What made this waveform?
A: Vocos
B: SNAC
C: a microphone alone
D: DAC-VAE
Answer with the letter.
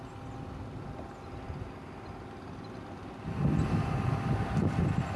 C